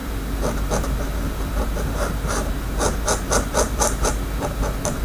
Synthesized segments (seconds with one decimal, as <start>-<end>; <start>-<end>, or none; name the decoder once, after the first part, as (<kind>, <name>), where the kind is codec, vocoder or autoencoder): none